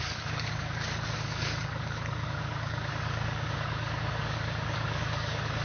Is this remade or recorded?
remade